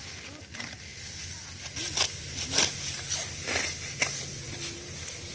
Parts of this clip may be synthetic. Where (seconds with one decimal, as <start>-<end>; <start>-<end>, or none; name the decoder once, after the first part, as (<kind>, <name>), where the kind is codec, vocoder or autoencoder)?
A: none